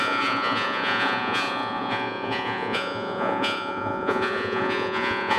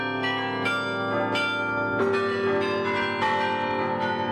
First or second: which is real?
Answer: second